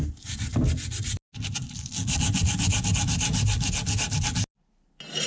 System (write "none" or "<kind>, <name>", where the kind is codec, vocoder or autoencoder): none